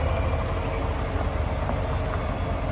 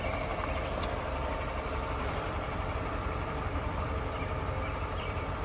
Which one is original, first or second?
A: first